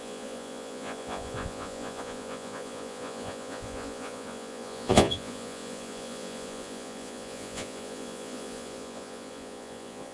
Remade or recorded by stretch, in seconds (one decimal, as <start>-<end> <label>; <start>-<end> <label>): 0.0-10.1 remade